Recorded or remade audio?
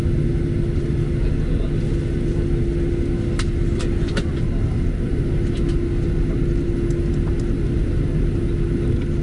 recorded